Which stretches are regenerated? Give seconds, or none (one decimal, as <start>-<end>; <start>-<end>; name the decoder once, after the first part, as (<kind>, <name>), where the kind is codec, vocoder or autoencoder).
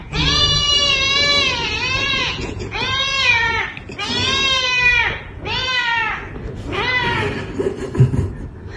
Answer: 0.0-0.7 (vocoder, Vocos); 2.0-3.6